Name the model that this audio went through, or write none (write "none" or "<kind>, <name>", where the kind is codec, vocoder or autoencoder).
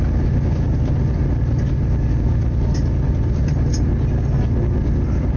none